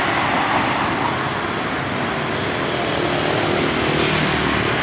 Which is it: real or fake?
real